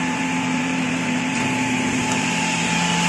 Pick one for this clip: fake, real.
fake